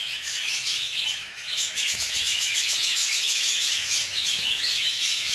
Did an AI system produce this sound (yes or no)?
yes